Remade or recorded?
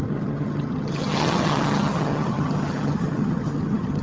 remade